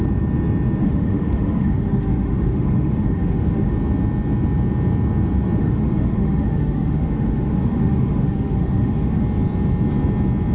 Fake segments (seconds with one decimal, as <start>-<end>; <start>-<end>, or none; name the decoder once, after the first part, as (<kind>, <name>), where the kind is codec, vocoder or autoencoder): 0.8-3.7 (autoencoder, DAC-VAE); 5.6-9.2